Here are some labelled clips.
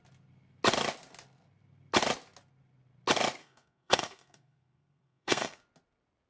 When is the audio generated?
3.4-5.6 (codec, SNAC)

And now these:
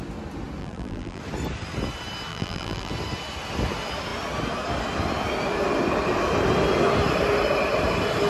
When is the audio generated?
0.6-1.2 (vocoder, BigVGAN v2); 2.3-2.9

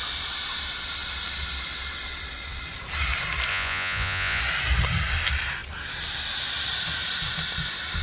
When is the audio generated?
3.5-4.4 (vocoder, Vocos)

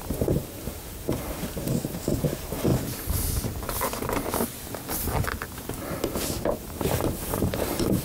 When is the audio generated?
0.0-2.7 (vocoder, BigVGAN v2); 6.6-8.0

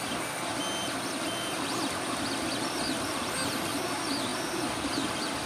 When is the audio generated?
none

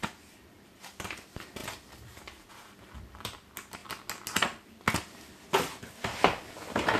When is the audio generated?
none

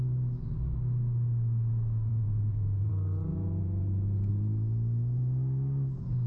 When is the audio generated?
2.1-2.9 (vocoder, Vocos); 3.3-4.3